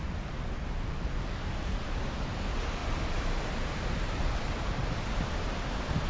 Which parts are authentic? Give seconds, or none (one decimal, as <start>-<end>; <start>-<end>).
0.0-6.1